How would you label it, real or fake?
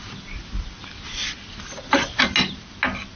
real